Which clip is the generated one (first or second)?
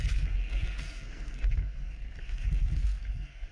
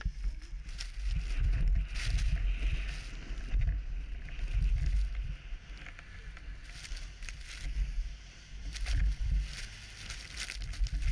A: first